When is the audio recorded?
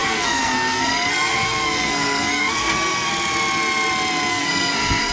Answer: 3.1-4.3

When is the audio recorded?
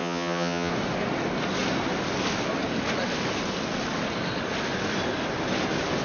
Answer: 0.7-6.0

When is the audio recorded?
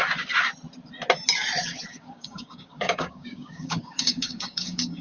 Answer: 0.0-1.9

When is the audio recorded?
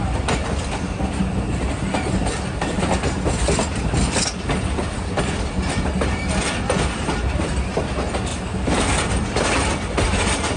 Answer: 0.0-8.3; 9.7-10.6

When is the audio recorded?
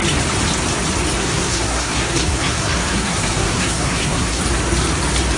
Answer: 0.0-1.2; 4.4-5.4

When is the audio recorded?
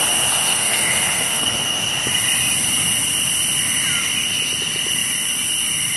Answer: 0.0-0.5; 1.8-6.0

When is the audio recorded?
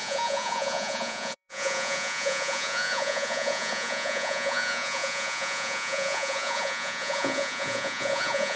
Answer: none